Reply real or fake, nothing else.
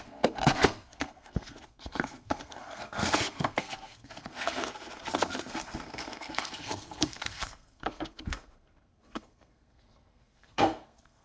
fake